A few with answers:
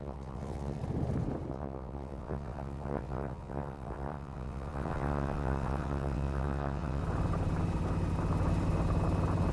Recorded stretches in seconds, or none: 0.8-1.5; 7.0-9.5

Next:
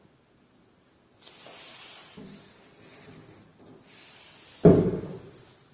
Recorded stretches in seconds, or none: 0.0-5.7

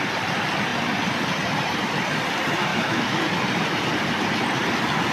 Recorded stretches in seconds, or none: 0.0-2.7; 3.2-5.1

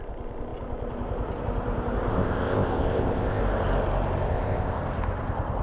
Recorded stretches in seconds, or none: 0.0-2.1; 3.4-4.3; 4.8-5.6

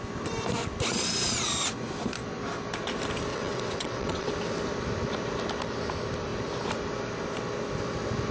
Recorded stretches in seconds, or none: 0.0-3.3; 4.3-8.3

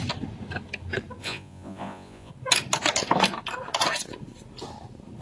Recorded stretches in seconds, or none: 0.0-1.2; 2.3-5.2

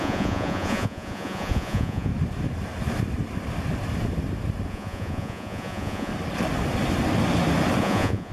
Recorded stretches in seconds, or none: 2.1-4.7; 6.1-7.8

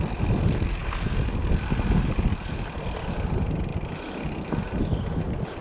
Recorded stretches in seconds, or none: 0.0-5.6